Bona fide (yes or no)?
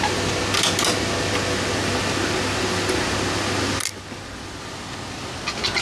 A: yes